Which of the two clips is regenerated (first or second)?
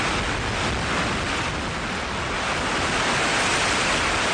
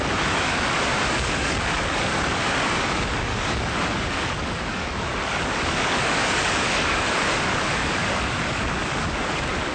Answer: second